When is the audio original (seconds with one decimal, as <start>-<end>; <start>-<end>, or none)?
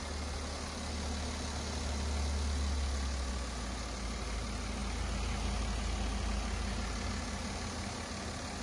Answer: 0.0-8.6